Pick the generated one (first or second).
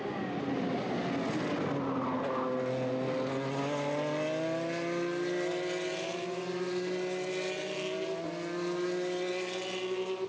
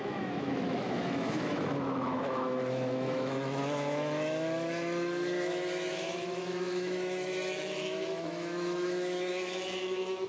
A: second